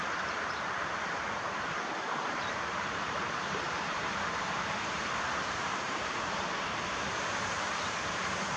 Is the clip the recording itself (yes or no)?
no